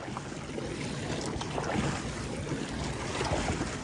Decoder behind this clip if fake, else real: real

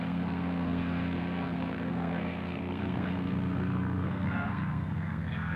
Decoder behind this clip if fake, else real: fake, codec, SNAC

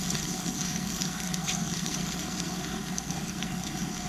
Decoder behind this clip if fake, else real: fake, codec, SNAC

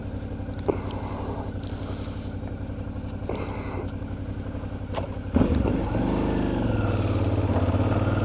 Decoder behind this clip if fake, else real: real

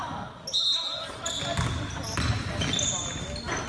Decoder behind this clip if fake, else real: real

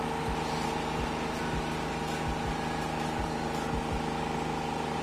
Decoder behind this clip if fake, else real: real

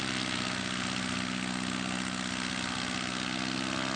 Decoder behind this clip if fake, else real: real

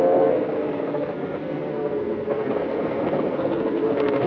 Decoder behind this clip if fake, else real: fake, codec, SNAC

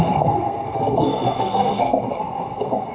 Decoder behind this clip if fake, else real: fake, codec, SNAC